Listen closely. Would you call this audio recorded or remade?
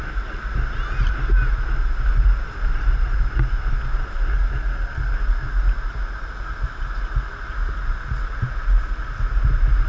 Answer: recorded